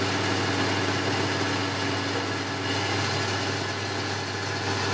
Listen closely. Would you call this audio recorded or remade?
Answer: recorded